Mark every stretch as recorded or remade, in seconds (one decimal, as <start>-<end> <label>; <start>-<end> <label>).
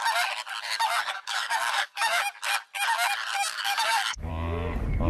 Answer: 0.0-1.0 recorded; 1.0-2.2 remade; 2.2-3.5 recorded; 3.5-4.3 remade; 4.3-5.1 recorded